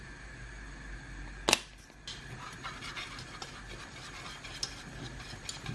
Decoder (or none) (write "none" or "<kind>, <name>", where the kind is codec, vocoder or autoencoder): none